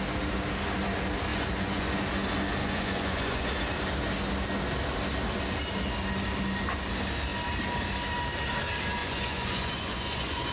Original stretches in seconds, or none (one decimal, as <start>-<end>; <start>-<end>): 0.0-1.3; 1.9-2.6; 3.5-9.0